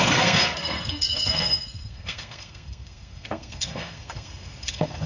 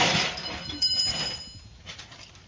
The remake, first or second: first